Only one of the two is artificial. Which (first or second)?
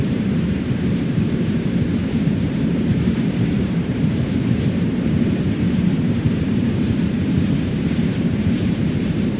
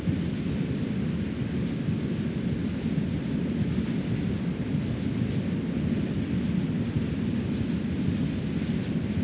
first